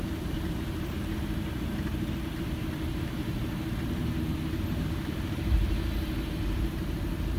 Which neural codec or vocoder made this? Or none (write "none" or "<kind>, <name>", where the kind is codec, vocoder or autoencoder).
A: vocoder, BigVGAN v2